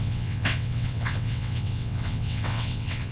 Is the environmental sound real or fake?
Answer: fake